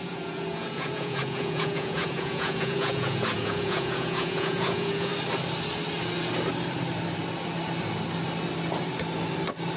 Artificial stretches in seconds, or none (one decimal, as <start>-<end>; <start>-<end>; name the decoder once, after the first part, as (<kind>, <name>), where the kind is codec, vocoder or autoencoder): 0.0-5.1 (vocoder, Vocos)